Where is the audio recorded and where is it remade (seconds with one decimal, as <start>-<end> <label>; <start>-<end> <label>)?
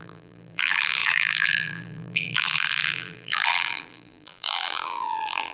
0.0-5.5 remade